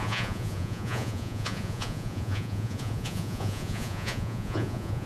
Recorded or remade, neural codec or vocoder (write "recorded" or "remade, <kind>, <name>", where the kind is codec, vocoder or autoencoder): remade, vocoder, Vocos